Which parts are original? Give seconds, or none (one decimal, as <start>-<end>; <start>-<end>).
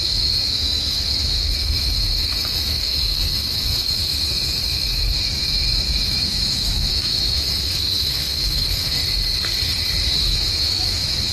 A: 9.0-10.3